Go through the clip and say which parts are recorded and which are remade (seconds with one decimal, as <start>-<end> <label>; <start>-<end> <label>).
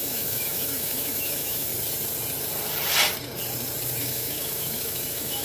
0.0-1.7 remade; 1.7-4.0 recorded; 4.0-5.4 remade